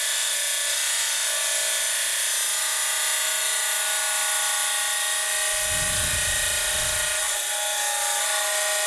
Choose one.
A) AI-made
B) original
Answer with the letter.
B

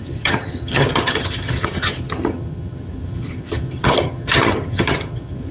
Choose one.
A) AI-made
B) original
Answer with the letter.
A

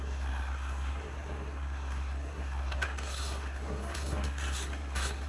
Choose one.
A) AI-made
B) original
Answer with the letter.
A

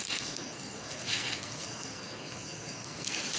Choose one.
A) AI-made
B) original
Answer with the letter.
A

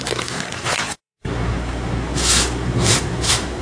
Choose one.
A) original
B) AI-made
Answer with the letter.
B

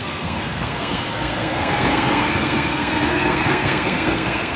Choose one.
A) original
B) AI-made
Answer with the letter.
B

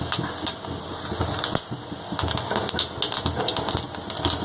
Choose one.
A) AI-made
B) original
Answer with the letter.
B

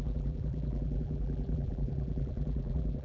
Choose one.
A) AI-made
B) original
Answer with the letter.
A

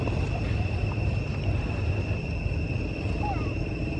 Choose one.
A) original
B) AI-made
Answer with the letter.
A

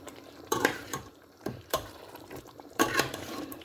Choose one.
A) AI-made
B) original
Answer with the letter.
A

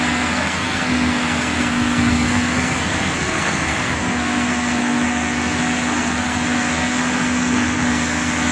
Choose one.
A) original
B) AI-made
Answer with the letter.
B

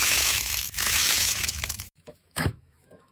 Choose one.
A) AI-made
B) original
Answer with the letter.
A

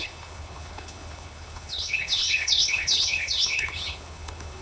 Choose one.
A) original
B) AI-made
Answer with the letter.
B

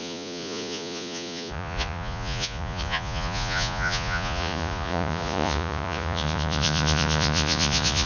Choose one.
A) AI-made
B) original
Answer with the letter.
A